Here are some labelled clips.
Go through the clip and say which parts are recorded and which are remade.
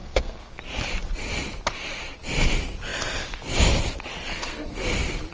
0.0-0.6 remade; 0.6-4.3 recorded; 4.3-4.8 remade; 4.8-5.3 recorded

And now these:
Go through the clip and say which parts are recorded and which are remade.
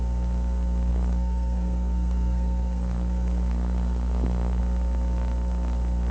0.0-0.9 recorded; 0.9-4.6 remade; 4.6-6.1 recorded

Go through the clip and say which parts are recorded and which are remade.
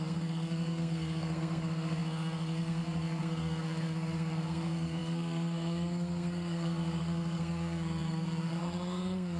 0.0-9.4 remade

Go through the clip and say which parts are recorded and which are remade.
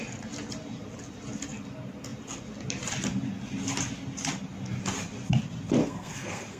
0.0-5.8 recorded; 5.8-6.6 remade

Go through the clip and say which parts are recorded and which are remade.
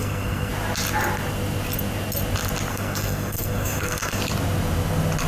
0.0-0.5 remade; 0.5-2.7 recorded; 2.7-4.2 remade; 4.2-5.3 recorded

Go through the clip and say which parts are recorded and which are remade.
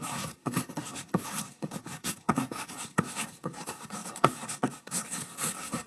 0.0-5.9 remade